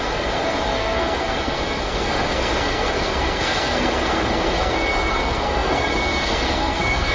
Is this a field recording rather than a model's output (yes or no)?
no